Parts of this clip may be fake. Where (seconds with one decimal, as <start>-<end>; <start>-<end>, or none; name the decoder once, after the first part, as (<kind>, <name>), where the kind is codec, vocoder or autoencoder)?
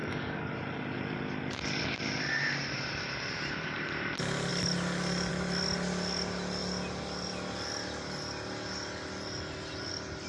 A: 0.0-0.5 (codec, DAC)